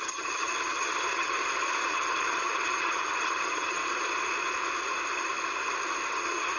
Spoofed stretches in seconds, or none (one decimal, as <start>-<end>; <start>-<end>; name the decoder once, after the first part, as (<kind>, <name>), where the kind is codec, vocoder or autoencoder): 0.0-1.4 (vocoder, HiFi-GAN); 1.9-3.8; 6.1-6.6